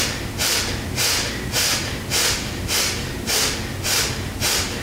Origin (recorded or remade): recorded